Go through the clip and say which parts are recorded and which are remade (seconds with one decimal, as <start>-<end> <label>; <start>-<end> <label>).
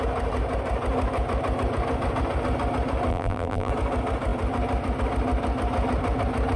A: 0.0-3.1 recorded; 3.1-3.7 remade; 3.7-6.6 recorded